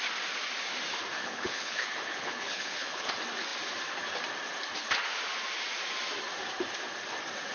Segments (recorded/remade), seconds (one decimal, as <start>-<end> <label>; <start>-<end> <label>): 0.0-1.2 recorded; 1.2-3.1 remade; 3.1-7.5 recorded